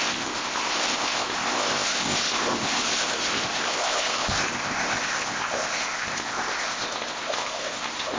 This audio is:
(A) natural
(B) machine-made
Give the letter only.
B